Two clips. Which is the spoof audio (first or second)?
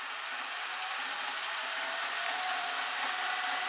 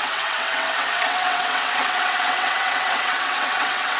second